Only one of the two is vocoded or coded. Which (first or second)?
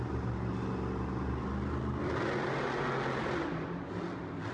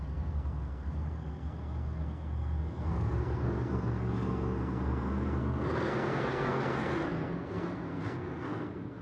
second